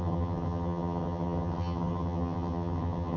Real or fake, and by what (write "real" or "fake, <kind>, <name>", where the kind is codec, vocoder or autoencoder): fake, vocoder, HiFi-GAN